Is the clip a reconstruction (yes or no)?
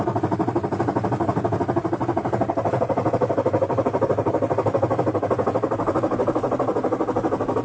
no